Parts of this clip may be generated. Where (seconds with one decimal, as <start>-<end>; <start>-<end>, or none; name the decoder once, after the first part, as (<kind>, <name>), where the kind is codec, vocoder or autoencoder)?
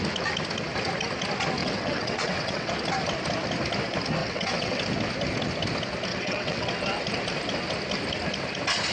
1.6-2.7 (vocoder, WaveNeXt); 4.2-4.8; 6.1-6.7